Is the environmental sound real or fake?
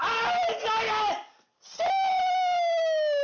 real